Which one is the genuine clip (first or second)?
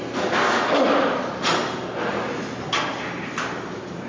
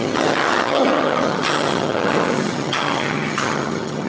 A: first